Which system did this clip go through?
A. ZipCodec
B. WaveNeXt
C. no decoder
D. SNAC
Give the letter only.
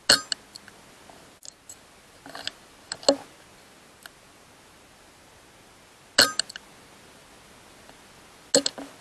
C